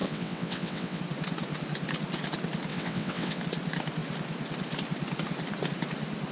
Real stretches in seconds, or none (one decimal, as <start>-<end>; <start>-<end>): 1.0-2.7; 3.4-6.3